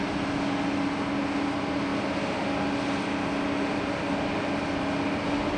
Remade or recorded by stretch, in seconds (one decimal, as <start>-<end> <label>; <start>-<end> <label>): 0.0-5.6 recorded